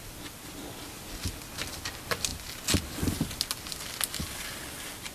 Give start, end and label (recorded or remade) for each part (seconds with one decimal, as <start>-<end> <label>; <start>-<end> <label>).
0.0-5.1 recorded